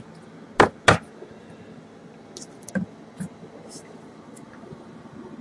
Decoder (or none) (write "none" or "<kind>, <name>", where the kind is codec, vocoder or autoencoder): none